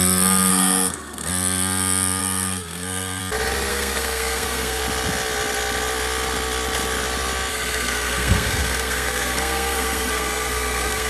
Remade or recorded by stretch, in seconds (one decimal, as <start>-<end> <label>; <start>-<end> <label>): 0.0-0.5 recorded; 0.5-1.3 remade; 1.3-2.2 recorded; 2.2-3.2 remade; 3.2-3.7 recorded; 3.7-4.8 remade; 4.8-7.5 recorded; 7.5-11.1 remade